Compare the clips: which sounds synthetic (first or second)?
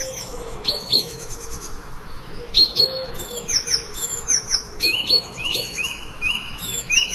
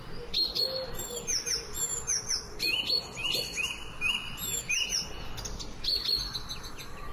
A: first